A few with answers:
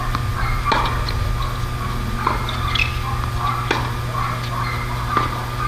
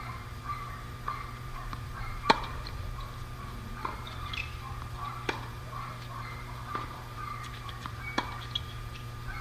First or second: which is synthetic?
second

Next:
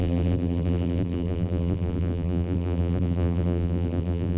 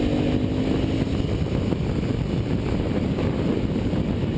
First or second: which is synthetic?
first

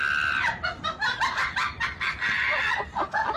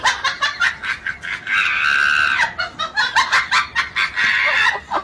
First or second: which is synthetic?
first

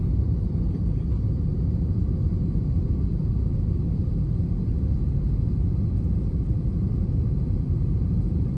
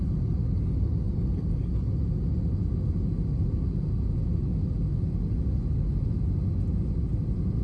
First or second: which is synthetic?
first